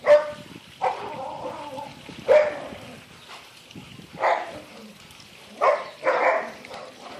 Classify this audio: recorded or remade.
remade